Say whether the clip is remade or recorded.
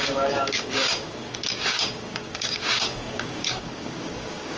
remade